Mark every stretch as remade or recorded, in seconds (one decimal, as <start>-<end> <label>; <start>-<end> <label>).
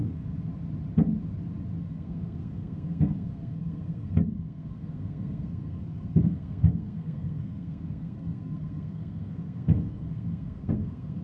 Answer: 0.0-0.5 remade; 0.5-1.8 recorded; 1.8-11.2 remade